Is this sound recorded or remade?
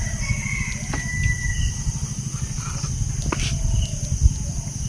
recorded